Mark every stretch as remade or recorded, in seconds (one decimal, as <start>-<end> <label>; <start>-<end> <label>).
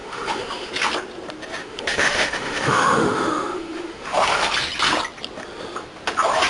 0.0-0.7 remade; 0.7-1.6 recorded; 1.6-4.5 remade; 4.5-6.5 recorded